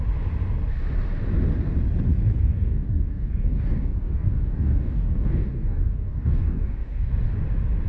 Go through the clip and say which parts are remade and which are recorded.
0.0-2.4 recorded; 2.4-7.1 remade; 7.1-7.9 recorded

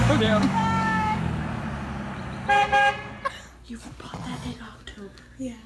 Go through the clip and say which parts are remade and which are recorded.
0.0-1.2 remade; 1.2-4.9 recorded; 4.9-5.7 remade